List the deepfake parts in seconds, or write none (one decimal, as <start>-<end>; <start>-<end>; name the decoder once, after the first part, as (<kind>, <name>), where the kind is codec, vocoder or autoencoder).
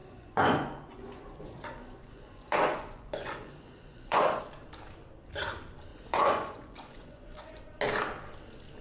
0.0-4.4 (vocoder, Vocos); 5.9-7.6